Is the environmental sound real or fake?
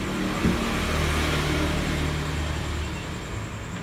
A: real